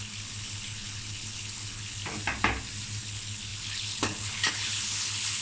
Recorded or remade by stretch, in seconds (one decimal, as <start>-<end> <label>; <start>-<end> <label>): 0.0-2.0 remade; 2.0-3.0 recorded; 3.0-5.4 remade